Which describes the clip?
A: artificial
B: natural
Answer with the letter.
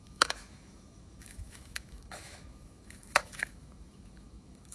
A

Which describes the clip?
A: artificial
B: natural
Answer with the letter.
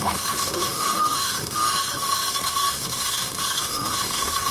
A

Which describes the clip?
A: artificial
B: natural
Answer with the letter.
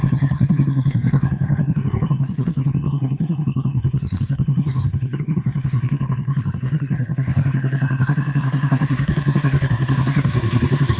A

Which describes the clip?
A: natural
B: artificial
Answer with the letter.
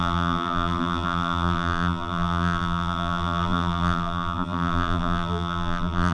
B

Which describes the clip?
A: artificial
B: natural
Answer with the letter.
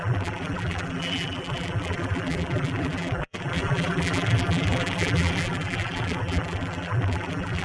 A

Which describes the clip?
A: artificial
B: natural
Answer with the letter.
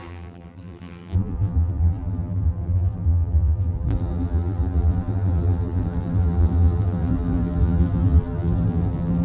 A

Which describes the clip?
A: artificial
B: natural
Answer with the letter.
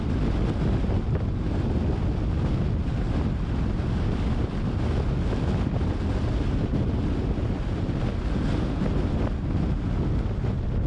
B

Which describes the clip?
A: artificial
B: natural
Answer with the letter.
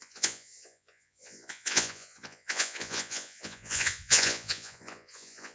A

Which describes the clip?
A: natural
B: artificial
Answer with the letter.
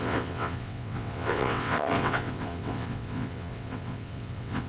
B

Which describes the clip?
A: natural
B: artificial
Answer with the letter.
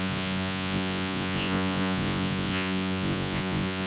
B